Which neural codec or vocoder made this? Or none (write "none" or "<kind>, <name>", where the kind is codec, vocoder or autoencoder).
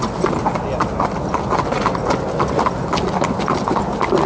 none